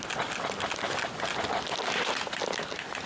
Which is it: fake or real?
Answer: real